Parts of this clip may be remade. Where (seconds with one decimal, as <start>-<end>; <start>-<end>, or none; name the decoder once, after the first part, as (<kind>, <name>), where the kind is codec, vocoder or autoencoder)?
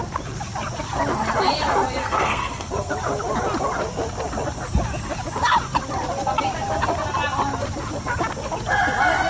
2.0-2.9 (codec, SNAC)